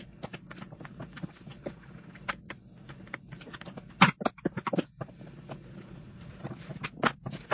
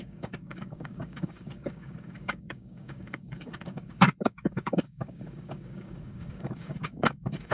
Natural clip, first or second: first